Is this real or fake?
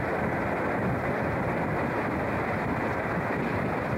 real